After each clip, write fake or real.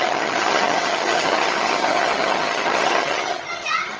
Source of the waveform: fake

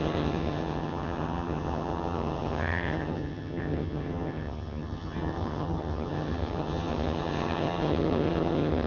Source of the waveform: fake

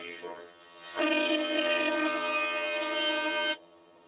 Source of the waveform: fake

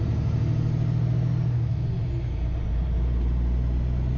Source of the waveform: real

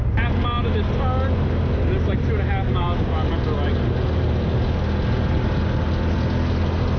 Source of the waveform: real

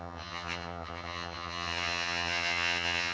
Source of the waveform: fake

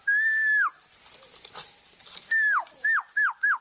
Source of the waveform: real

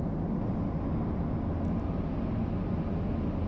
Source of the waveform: real